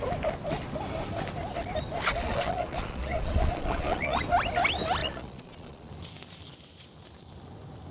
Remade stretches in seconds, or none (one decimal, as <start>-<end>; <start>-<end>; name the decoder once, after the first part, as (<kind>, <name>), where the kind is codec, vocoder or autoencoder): 2.1-4.2 (vocoder, Vocos); 5.0-5.9